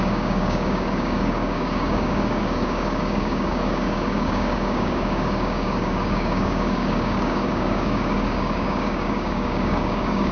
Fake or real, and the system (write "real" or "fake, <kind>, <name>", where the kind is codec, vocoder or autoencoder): fake, codec, DAC